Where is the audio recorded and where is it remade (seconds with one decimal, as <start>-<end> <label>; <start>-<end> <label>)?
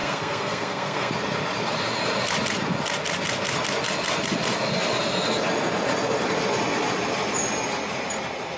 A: 0.0-1.1 remade; 1.1-8.6 recorded